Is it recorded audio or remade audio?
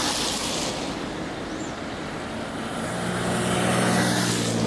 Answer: recorded